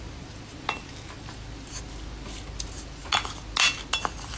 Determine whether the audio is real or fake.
real